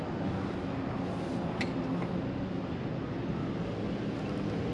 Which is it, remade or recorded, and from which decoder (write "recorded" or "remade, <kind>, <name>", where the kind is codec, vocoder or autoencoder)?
recorded